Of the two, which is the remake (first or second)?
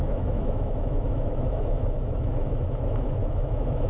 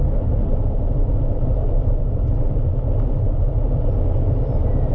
first